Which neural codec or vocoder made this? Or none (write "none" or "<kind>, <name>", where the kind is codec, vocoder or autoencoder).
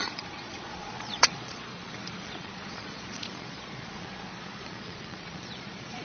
vocoder, Vocos